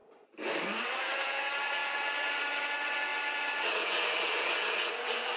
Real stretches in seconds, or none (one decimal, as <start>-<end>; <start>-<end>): 0.0-0.8